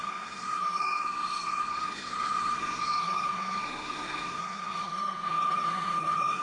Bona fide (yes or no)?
no